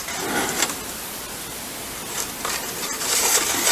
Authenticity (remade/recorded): recorded